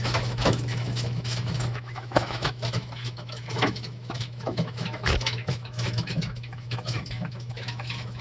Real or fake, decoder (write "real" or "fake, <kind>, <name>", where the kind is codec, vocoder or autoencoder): fake, autoencoder, DAC-VAE